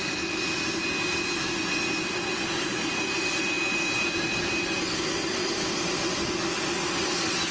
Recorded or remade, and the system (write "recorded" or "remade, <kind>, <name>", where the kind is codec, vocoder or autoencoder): recorded